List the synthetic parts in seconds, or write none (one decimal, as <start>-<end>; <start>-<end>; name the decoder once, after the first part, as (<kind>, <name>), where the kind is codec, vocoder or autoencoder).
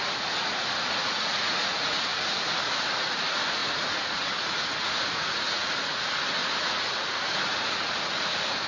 0.0-8.7 (vocoder, Vocos)